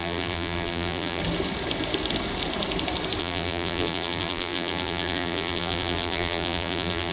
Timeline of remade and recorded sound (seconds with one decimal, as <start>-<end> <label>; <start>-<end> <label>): 0.0-1.2 remade; 1.2-3.2 recorded; 3.2-7.1 remade